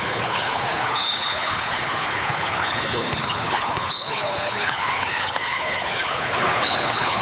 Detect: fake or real fake